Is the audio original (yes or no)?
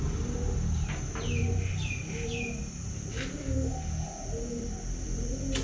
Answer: yes